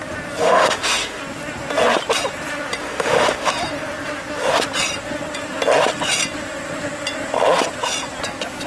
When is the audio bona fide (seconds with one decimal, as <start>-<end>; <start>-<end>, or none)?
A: 0.0-0.4; 1.2-2.8; 3.5-8.7